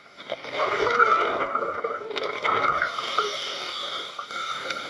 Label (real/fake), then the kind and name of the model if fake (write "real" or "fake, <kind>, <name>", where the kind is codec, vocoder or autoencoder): fake, codec, DAC